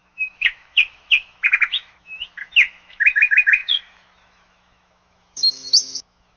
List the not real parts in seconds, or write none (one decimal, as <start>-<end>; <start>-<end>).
0.0-6.4